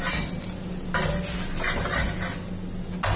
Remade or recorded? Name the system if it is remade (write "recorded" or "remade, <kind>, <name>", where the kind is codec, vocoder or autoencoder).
recorded